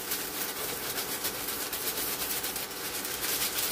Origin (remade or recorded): remade